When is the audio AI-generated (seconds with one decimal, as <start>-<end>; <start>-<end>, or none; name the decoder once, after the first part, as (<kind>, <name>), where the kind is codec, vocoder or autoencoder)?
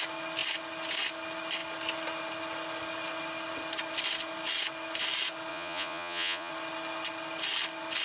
5.5-6.5 (vocoder, Vocos)